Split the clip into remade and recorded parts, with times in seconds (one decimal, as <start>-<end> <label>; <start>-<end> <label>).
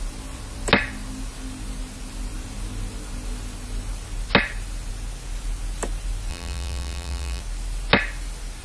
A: 0.0-6.3 recorded; 6.3-7.4 remade; 7.4-8.6 recorded